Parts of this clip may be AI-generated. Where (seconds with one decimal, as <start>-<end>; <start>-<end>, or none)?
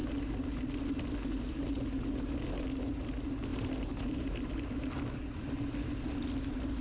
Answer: 3.5-4.8